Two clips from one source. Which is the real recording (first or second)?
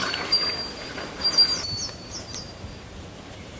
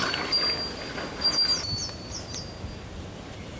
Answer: second